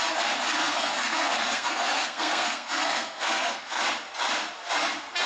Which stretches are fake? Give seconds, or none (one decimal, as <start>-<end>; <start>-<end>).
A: 0.6-3.8